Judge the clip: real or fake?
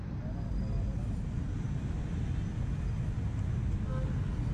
real